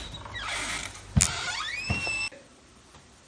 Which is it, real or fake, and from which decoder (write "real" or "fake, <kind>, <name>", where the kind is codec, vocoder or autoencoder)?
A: real